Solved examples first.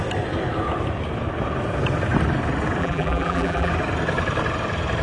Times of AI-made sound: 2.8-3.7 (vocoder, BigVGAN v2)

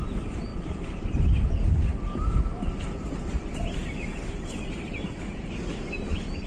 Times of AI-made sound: 0.0-0.5 (vocoder, BigVGAN v2); 3.4-3.8; 4.5-6.5

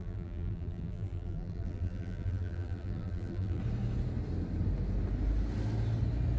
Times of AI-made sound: 0.0-3.6 (vocoder, BigVGAN v2)

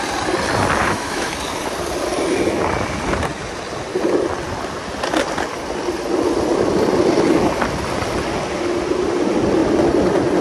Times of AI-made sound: 0.8-1.3 (autoencoder, DAC-VAE)

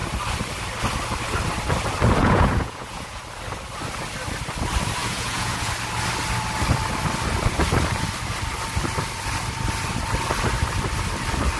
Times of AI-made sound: 2.2-3.2 (vocoder, Vocos); 5.0-5.7